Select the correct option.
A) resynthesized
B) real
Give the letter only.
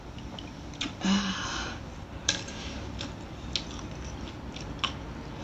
B